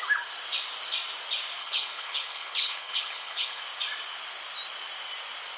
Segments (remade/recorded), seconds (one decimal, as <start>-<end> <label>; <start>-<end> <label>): 0.0-1.6 recorded; 1.6-3.6 remade; 3.6-5.6 recorded